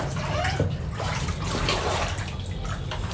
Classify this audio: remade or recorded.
recorded